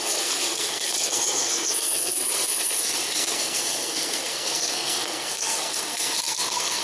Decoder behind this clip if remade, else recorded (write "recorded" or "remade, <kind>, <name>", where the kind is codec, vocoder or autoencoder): remade, codec, SNAC